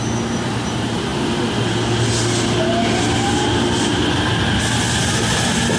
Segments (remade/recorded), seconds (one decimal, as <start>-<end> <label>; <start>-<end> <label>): 0.0-5.8 recorded